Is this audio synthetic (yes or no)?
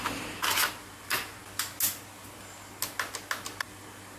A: no